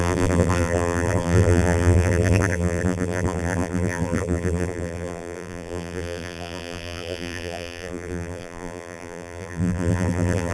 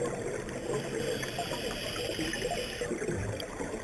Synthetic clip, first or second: first